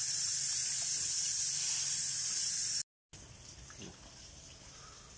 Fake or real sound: real